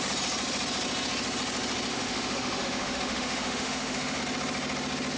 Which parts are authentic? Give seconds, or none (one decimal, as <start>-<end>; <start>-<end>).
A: 0.0-1.9; 4.2-5.2